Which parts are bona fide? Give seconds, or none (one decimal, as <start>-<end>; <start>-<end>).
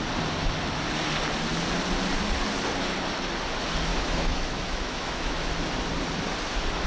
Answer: 0.0-3.9; 5.5-6.9